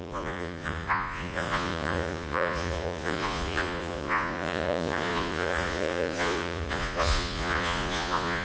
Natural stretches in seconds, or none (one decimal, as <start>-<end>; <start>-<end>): none